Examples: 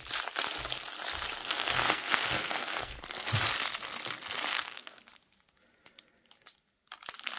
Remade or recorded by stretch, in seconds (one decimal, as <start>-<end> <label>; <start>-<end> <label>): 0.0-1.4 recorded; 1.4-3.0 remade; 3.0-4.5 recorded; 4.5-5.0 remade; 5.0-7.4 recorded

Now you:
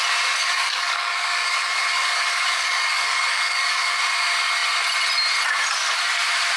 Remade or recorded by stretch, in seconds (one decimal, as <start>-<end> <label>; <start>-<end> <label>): 0.0-0.4 recorded; 0.4-4.0 remade; 4.0-6.6 recorded

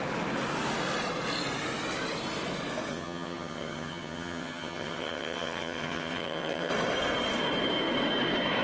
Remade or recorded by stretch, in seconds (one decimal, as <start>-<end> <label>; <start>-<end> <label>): 0.0-2.9 recorded; 2.9-6.7 remade; 6.7-8.6 recorded